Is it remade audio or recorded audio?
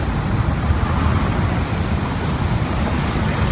recorded